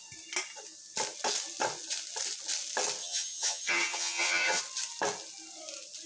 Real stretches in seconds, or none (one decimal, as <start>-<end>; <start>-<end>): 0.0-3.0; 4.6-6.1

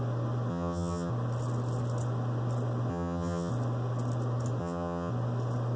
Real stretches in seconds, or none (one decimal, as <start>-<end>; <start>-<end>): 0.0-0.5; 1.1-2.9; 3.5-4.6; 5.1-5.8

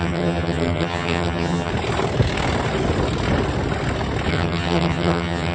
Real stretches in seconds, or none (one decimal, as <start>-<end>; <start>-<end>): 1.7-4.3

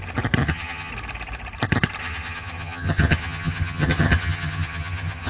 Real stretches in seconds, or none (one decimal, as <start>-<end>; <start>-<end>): 0.0-0.4; 0.9-2.0